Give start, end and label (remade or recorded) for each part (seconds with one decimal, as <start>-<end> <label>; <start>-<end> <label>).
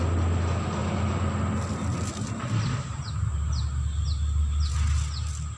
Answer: 0.0-5.6 recorded